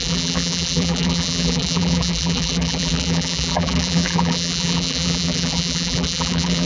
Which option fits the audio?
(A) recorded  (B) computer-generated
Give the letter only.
B